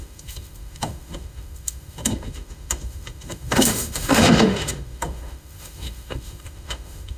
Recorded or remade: remade